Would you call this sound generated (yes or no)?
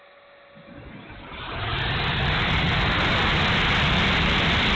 no